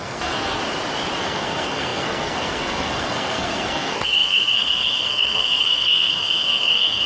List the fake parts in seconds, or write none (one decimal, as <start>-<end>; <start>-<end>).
0.0-0.6; 1.2-7.1